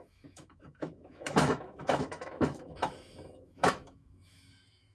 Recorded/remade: remade